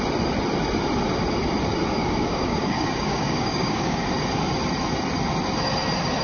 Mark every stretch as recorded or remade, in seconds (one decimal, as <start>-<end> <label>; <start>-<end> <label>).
0.0-2.0 recorded; 2.0-4.1 remade; 4.1-6.2 recorded